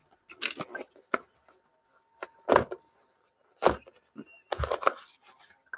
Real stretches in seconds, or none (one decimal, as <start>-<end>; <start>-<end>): 0.0-5.8